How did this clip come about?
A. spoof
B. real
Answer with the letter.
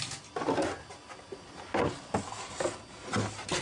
B